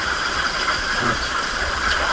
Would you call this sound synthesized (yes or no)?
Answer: yes